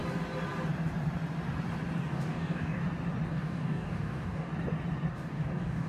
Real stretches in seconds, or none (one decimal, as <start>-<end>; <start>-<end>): 0.0-2.0; 2.8-3.3; 4.5-5.1